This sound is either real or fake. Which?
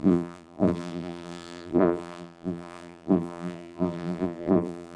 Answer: fake